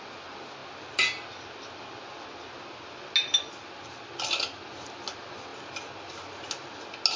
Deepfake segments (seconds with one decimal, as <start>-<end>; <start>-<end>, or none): none